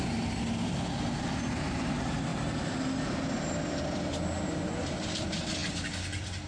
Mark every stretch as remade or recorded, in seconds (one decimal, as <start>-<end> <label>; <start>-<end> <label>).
0.0-6.5 recorded